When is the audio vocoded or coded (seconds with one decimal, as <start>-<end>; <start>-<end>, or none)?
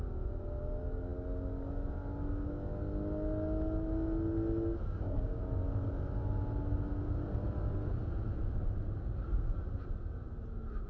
4.8-5.4